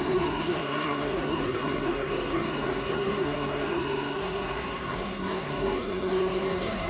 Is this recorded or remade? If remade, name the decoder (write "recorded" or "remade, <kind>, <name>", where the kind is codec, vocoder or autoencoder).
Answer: remade, codec, SNAC